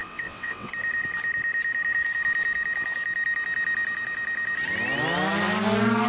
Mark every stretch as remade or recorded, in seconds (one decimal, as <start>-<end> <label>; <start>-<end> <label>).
0.0-0.7 remade; 0.7-6.1 recorded